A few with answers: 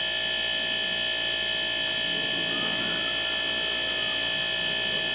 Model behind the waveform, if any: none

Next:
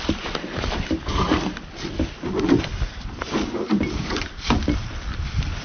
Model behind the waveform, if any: none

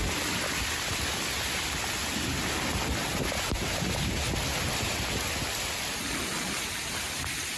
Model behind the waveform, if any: none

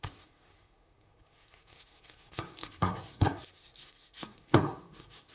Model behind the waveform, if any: codec, SNAC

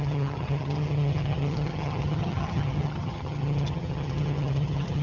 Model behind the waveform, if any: vocoder, HiFi-GAN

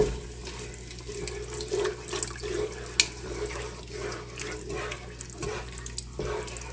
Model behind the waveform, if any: none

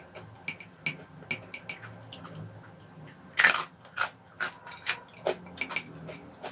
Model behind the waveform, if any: none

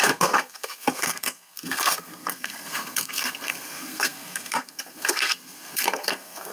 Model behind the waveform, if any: codec, SNAC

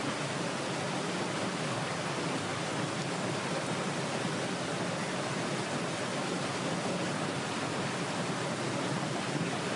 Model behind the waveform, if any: none